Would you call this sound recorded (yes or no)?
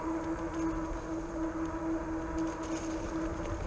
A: yes